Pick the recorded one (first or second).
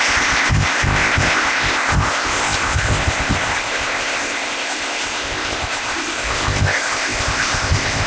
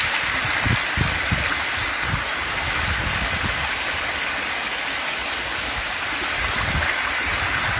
second